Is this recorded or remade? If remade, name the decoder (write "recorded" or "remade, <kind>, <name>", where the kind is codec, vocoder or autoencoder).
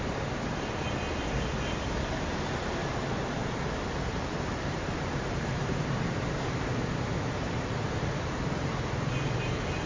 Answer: remade, vocoder, BigVGAN v2